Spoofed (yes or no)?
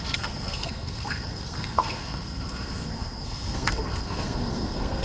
yes